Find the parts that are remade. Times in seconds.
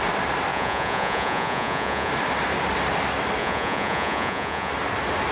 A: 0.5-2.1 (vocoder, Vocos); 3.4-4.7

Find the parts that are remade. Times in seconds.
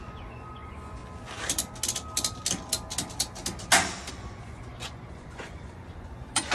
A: 0.0-1.0 (vocoder, Vocos); 4.1-6.5